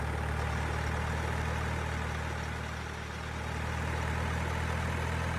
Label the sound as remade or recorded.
recorded